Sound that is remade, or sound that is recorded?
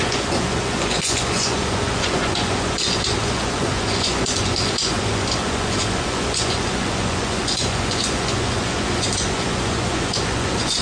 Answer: remade